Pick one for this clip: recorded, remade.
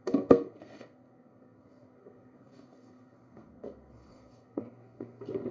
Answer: remade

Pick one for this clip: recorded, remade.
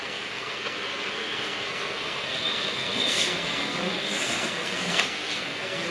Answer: remade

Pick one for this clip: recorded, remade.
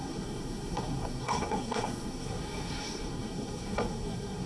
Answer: remade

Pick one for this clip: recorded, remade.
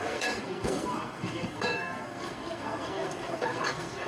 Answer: remade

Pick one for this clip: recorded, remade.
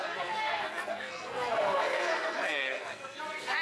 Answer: remade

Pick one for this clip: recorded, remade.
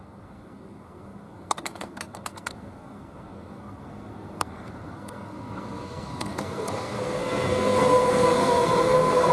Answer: remade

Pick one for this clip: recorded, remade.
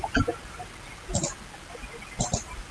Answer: recorded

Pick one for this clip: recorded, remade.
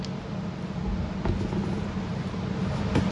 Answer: recorded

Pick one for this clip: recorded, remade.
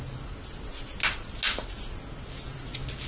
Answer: recorded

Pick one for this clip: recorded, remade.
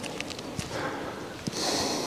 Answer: recorded